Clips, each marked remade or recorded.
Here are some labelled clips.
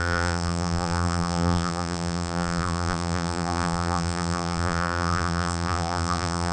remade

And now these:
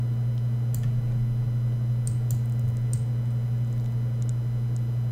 recorded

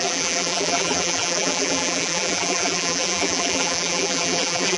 remade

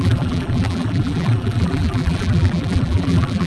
remade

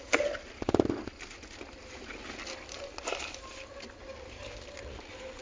recorded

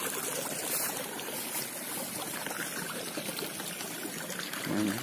recorded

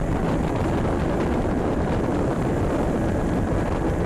remade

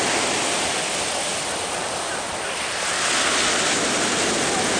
recorded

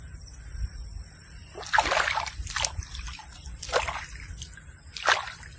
recorded